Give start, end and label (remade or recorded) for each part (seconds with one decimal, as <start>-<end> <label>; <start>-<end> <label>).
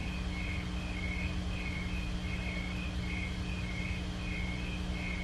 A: 0.0-5.2 recorded